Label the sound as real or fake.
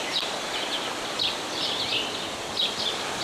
real